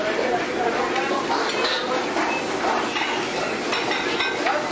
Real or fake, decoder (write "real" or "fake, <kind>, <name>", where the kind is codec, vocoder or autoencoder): real